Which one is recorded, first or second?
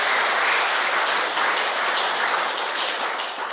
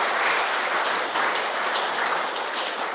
first